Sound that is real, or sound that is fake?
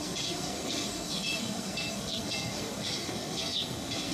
fake